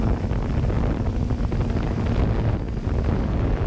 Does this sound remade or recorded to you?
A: recorded